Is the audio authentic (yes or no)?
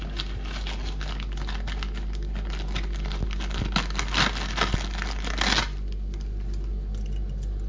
yes